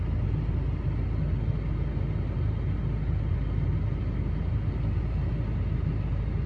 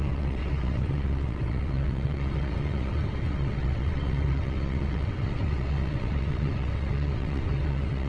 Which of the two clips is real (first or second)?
first